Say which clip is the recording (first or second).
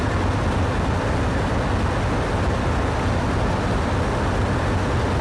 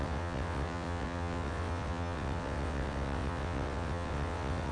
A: first